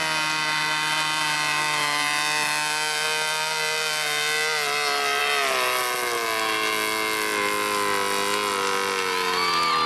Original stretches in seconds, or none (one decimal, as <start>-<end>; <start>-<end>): 0.0-9.9